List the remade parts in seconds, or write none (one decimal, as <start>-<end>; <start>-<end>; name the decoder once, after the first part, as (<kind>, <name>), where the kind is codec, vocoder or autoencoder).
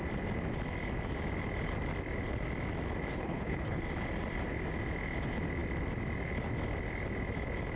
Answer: 3.1-3.8 (codec, HILCodec)